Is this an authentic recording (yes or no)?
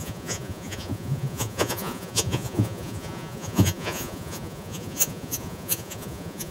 no